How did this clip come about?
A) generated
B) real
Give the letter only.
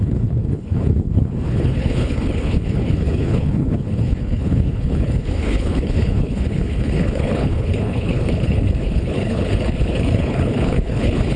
A